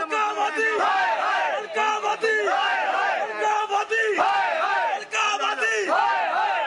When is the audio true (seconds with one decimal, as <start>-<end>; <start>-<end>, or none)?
0.0-6.7